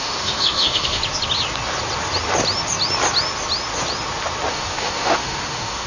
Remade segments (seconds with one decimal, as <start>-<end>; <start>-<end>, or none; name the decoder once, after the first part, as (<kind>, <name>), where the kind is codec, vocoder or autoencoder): 0.0-1.0 (autoencoder, DAC-VAE); 4.5-5.9